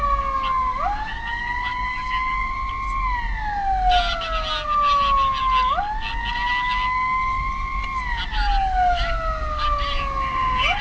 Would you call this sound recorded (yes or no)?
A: yes